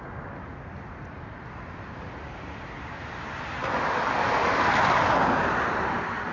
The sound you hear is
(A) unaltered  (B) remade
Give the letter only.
A